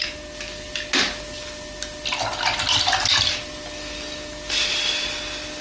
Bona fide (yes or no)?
yes